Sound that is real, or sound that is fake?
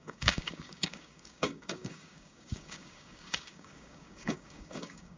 fake